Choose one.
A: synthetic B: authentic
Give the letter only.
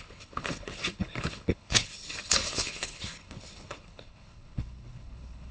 A